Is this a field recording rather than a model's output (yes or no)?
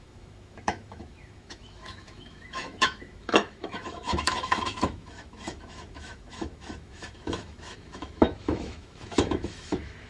no